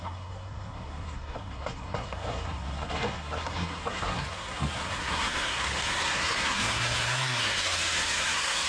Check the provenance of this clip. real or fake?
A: fake